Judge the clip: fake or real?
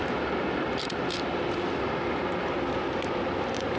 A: real